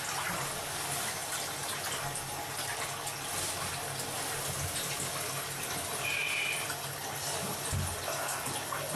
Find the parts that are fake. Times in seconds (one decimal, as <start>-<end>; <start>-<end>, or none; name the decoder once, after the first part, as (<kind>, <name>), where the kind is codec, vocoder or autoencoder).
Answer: none

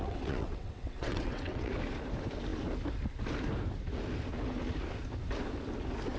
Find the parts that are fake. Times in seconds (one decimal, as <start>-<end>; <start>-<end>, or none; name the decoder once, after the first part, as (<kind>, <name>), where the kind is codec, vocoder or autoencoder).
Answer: 0.0-1.7 (vocoder, WaveNeXt)

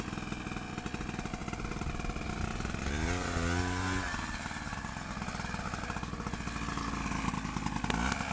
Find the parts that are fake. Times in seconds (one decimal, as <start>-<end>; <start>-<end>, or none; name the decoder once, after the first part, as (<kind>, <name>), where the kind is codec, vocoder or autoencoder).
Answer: none

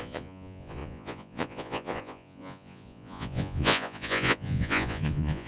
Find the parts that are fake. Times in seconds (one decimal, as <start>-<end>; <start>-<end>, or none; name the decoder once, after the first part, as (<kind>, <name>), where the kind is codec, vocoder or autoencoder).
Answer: 0.0-5.5 (vocoder, Vocos)

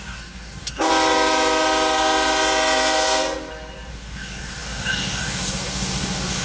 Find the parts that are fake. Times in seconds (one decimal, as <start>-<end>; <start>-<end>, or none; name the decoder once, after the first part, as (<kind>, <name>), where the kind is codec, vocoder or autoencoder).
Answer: 0.0-0.9 (codec, DAC); 3.9-6.4

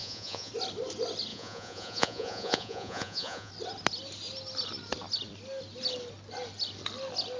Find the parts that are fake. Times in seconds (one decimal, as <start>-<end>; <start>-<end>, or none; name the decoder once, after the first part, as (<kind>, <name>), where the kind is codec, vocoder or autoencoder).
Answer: 0.0-0.5 (vocoder, Vocos); 1.3-3.5